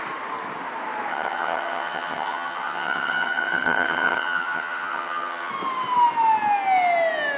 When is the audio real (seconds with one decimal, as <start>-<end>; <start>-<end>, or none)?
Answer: 0.0-1.1; 5.5-7.4